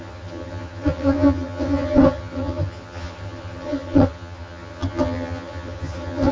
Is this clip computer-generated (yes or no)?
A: yes